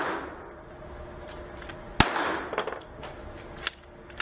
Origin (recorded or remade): recorded